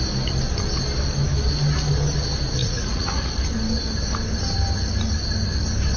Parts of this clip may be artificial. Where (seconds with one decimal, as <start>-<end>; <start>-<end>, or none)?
2.6-3.3